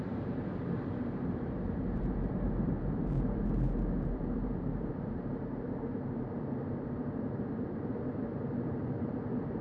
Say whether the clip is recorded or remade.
remade